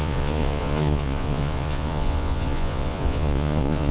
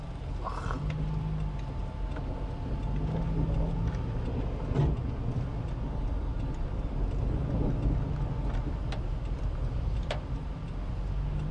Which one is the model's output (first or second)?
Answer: first